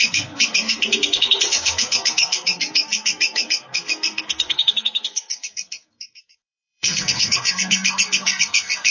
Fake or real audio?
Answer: fake